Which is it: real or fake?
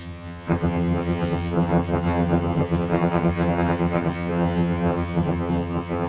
fake